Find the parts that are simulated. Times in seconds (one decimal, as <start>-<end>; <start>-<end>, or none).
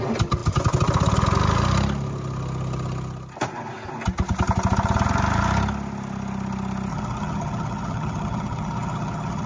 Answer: 6.9-9.5